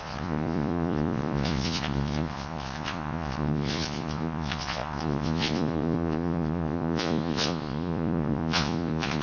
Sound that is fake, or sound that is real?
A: fake